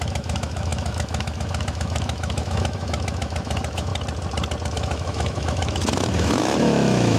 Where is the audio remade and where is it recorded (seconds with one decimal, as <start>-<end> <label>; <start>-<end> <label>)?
0.0-3.9 remade; 3.9-4.7 recorded; 4.7-7.2 remade